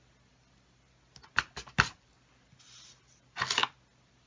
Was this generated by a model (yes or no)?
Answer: no